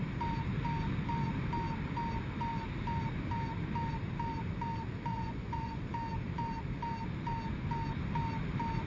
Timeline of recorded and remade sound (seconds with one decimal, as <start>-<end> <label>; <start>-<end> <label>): 0.0-5.1 recorded; 5.1-5.8 remade; 5.8-8.9 recorded